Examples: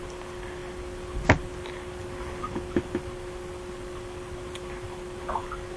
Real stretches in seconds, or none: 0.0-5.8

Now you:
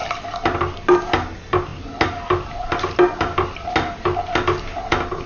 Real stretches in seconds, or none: 0.0-5.3

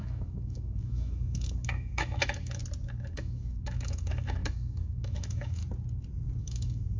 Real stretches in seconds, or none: 2.6-3.1; 5.6-6.4

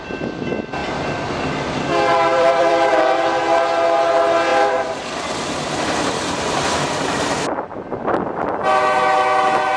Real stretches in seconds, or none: 0.0-0.8; 1.3-2.3; 3.0-4.5; 7.6-9.8

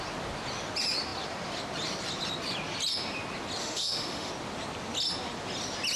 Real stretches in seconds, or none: 0.0-3.6; 4.3-6.0

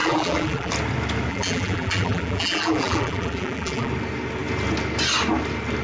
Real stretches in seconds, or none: 0.7-1.3; 3.9-5.8

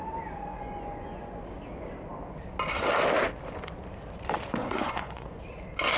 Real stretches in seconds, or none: 0.0-0.5; 1.4-4.6; 5.4-6.0